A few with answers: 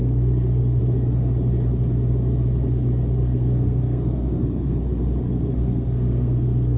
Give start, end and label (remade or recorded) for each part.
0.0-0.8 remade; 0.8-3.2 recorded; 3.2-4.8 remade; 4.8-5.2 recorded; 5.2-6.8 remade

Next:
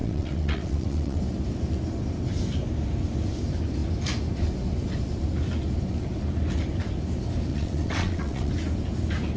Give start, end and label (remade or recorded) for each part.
0.0-1.2 remade; 1.2-7.5 recorded; 7.5-8.5 remade; 8.5-9.4 recorded

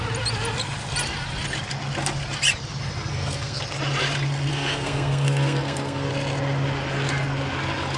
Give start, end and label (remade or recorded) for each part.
0.0-3.1 recorded; 3.1-3.6 remade; 3.6-4.5 recorded; 4.5-6.1 remade; 6.1-8.0 recorded

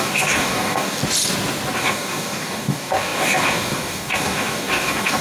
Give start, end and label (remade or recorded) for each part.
0.0-1.0 remade; 1.0-1.8 recorded; 1.8-5.2 remade

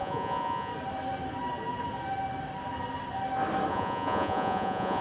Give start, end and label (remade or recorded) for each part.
0.0-0.7 remade; 0.7-3.7 recorded; 3.7-5.0 remade

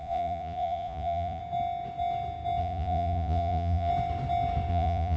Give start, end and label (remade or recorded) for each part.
0.0-1.4 remade; 1.4-2.6 recorded; 2.6-3.9 remade; 3.9-4.7 recorded; 4.7-5.2 remade

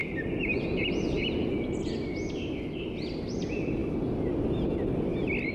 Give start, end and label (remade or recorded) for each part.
0.0-1.8 remade; 1.8-5.5 recorded